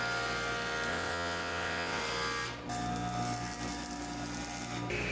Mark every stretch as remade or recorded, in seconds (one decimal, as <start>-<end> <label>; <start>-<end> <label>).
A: 0.0-0.9 recorded; 0.9-2.0 remade; 2.0-5.1 recorded